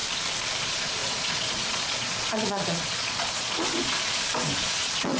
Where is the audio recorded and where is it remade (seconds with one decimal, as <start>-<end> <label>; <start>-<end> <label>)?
0.0-0.6 recorded; 0.6-5.2 remade